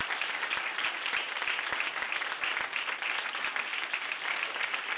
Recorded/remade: recorded